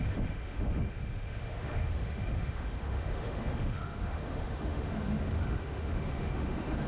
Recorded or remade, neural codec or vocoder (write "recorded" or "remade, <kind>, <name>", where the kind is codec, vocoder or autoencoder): remade, autoencoder, DAC-VAE